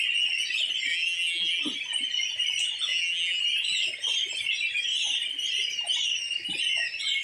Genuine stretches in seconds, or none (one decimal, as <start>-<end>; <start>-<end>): 0.0-0.9; 1.6-2.9; 3.4-7.2